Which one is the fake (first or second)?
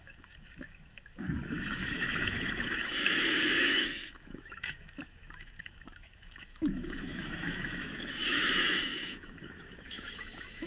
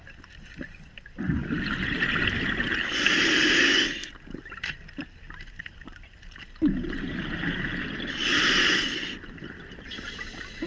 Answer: first